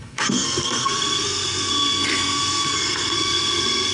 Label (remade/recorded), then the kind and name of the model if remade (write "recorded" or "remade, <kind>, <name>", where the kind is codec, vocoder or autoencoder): remade, codec, SNAC